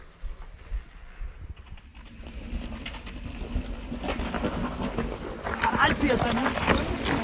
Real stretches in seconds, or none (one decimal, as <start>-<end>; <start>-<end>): 0.0-7.2